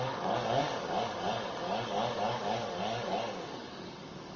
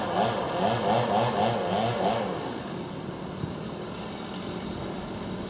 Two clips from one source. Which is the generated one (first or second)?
first